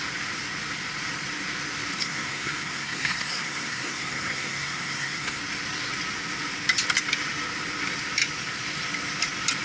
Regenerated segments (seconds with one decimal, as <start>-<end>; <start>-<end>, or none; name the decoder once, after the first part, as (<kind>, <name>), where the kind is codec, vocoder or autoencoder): 2.0-5.4 (codec, SNAC)